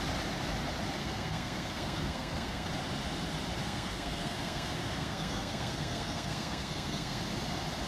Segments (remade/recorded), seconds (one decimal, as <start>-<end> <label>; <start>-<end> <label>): 0.0-1.0 recorded; 1.0-2.7 remade; 2.7-3.6 recorded; 3.6-7.2 remade; 7.2-7.9 recorded